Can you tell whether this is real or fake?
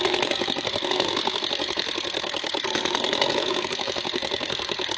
fake